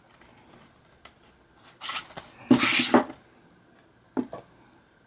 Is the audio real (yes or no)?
yes